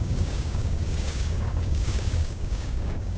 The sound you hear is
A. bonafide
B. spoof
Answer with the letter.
B